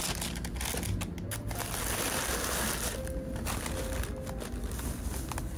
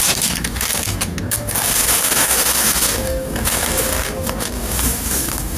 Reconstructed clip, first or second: second